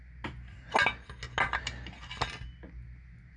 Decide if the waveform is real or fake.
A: real